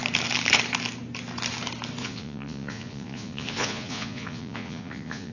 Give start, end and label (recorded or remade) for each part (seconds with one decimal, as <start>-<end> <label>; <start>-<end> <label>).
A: 0.0-2.0 recorded; 2.0-5.3 remade